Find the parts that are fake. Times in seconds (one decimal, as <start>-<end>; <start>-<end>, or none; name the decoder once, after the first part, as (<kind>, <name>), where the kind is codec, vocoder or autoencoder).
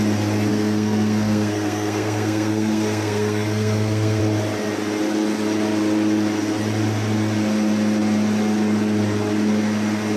0.5-4.2 (codec, SNAC)